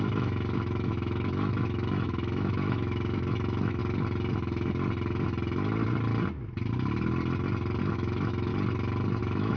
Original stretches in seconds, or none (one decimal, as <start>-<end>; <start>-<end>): 3.8-7.8; 8.5-9.2